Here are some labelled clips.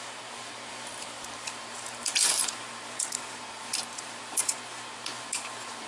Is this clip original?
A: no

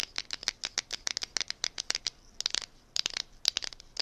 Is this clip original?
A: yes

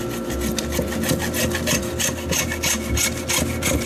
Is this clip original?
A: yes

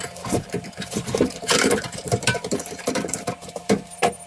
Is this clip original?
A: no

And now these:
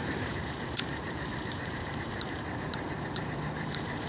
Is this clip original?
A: no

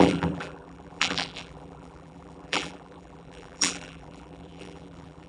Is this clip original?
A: no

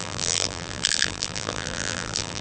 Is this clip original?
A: no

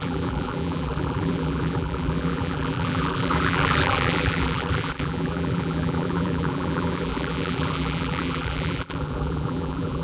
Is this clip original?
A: no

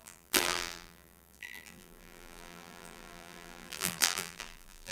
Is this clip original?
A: no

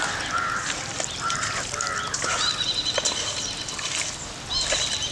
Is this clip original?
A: yes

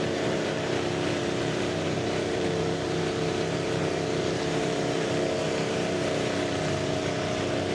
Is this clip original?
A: no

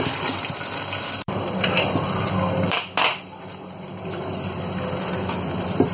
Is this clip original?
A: no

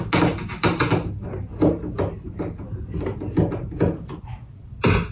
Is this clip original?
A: yes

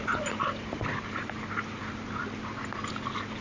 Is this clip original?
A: yes